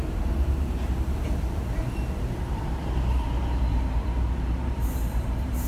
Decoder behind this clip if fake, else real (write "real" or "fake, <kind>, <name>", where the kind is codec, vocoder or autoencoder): fake, vocoder, BigVGAN v2